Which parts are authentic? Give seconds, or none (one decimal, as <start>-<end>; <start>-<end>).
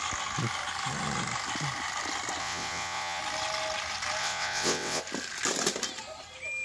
0.0-2.4; 3.2-4.2; 5.0-6.6